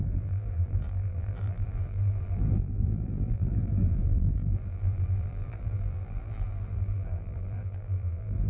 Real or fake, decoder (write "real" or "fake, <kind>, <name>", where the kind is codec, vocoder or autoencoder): fake, vocoder, BigVGAN v2